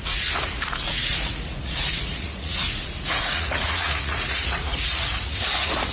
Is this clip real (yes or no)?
no